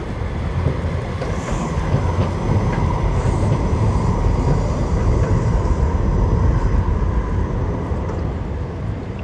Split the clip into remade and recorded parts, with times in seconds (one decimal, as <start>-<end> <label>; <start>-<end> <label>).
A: 0.0-9.2 recorded